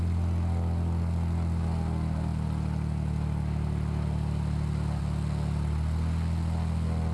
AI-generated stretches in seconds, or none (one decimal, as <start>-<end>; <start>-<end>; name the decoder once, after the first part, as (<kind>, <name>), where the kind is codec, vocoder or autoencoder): none